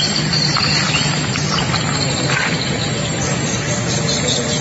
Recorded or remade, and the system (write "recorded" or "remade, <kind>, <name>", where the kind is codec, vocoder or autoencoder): remade, vocoder, BigVGAN v2